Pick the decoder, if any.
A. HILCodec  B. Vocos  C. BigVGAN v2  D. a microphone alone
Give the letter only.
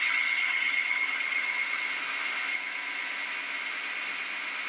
D